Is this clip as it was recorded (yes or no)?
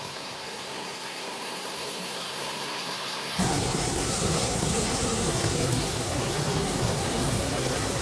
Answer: no